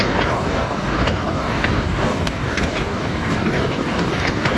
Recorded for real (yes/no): no